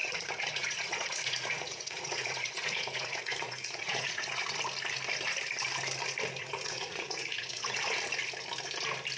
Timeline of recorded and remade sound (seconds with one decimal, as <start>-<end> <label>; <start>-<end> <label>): 0.0-4.6 remade; 4.6-6.4 recorded; 6.4-7.8 remade; 7.8-9.2 recorded